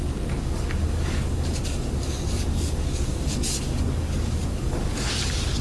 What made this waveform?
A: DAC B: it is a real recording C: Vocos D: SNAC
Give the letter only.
A